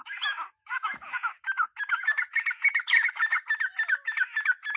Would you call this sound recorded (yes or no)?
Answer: no